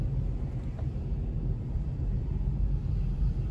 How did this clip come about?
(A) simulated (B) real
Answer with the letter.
B